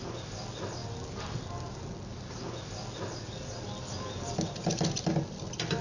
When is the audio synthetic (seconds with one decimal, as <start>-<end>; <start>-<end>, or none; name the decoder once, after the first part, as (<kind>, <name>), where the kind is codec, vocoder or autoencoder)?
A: none